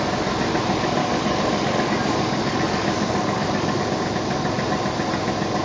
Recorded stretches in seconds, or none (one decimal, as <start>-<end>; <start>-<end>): 0.0-1.0; 3.8-5.6

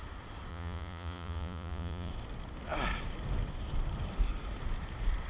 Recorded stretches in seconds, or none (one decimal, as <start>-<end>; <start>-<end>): 0.0-0.5; 2.1-5.3